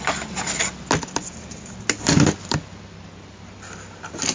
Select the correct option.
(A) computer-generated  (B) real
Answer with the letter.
B